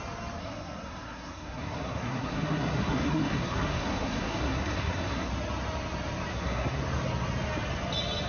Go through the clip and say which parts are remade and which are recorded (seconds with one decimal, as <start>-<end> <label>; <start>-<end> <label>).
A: 0.0-0.4 recorded; 0.4-5.3 remade; 5.3-6.3 recorded; 6.3-6.8 remade; 6.8-8.3 recorded